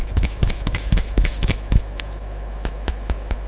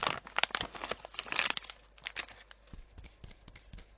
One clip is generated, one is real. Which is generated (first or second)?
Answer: first